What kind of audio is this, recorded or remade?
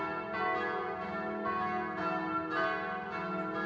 recorded